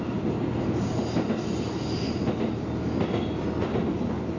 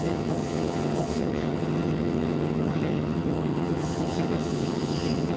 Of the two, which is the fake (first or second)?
second